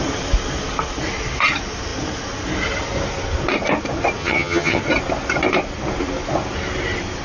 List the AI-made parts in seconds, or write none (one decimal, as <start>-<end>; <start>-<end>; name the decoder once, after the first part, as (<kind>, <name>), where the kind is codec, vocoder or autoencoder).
4.2-4.8 (vocoder, HiFi-GAN)

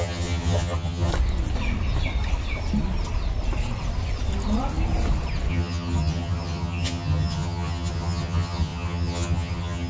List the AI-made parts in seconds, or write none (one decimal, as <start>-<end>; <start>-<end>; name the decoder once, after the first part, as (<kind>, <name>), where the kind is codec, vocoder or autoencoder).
0.0-1.1 (vocoder, HiFi-GAN); 5.5-9.9

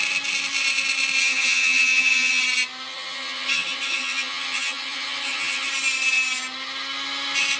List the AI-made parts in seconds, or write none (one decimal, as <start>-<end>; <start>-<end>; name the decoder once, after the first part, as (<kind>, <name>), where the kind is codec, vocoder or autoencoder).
1.2-2.4 (vocoder, HiFi-GAN); 2.9-5.7